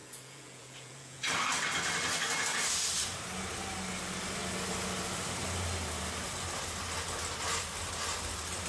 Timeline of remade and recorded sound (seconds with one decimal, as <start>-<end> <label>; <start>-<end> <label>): 0.0-1.2 remade; 1.2-8.7 recorded

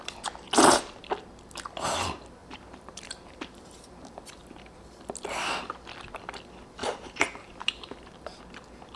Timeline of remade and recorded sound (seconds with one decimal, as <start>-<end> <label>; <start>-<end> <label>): 0.0-2.4 recorded; 2.4-5.0 remade; 5.0-6.8 recorded; 6.8-8.4 remade; 8.4-9.0 recorded

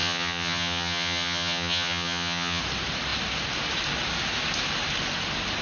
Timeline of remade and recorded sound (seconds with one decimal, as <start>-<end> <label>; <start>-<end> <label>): 0.0-2.6 remade; 2.6-5.6 recorded